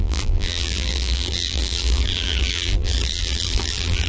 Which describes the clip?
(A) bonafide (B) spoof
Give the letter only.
B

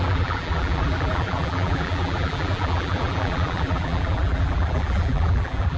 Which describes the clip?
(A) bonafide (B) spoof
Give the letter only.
B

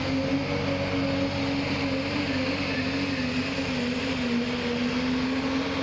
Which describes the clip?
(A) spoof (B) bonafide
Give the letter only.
B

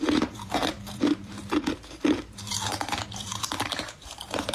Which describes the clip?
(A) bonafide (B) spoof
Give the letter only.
B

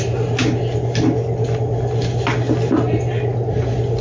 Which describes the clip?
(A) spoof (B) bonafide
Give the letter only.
B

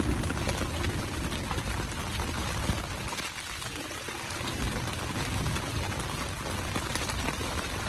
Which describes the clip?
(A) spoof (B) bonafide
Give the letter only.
B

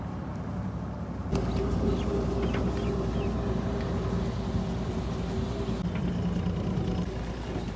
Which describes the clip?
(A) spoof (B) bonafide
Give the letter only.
B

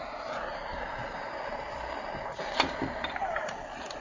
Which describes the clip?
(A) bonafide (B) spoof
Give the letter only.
A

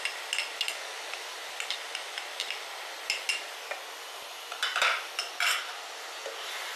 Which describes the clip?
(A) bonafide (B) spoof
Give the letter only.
A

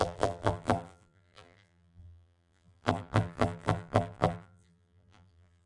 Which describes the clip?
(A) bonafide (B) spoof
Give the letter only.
B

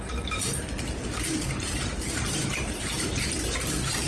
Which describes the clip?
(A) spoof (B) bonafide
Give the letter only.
A